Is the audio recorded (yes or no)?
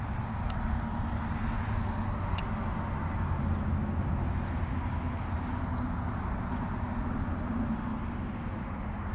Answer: yes